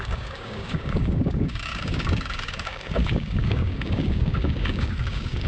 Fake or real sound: fake